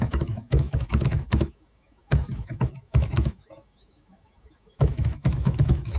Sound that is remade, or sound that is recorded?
remade